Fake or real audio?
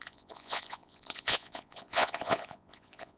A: fake